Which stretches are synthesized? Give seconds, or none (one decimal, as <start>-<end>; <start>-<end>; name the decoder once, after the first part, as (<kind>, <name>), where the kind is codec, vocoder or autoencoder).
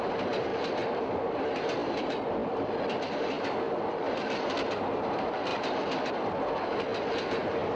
0.0-5.5 (vocoder, BigVGAN v2); 7.0-7.8